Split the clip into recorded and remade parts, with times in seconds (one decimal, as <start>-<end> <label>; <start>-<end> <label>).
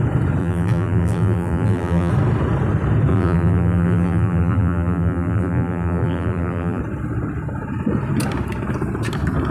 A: 0.0-0.4 recorded; 0.4-2.1 remade; 2.1-3.1 recorded; 3.1-6.8 remade; 6.8-9.5 recorded